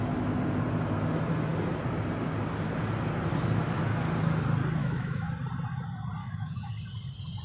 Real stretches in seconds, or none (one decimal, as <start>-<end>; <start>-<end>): 0.0-4.8; 5.3-6.2; 6.7-7.4